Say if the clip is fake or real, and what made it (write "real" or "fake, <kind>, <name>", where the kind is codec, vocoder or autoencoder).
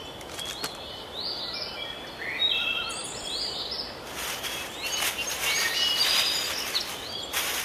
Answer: real